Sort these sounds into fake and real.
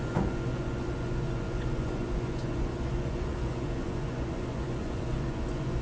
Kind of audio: fake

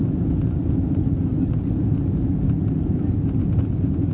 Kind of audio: real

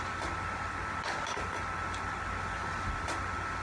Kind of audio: real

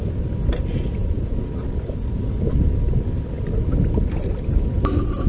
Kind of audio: real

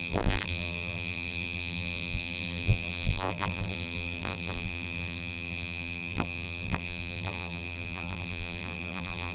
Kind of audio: fake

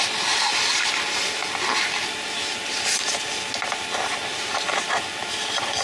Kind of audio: real